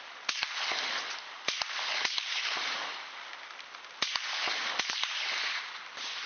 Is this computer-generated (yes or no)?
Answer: no